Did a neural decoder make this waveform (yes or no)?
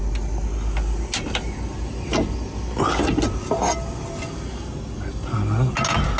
no